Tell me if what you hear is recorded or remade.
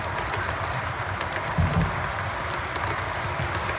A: recorded